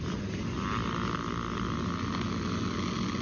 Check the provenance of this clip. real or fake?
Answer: real